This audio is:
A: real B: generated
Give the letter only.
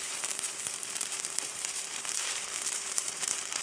B